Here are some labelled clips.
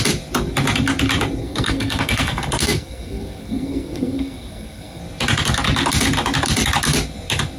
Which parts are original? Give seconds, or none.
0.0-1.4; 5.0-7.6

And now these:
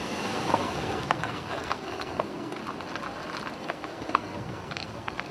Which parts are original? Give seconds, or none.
2.6-3.6

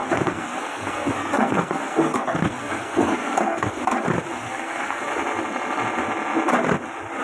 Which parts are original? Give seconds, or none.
3.8-4.4; 5.0-7.2

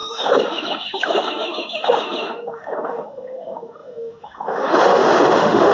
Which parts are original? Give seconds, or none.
none